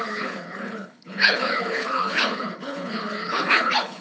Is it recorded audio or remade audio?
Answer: remade